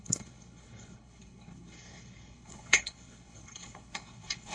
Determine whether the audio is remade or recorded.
remade